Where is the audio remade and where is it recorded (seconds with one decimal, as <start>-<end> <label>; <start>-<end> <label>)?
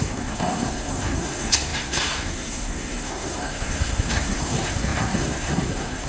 0.0-6.1 remade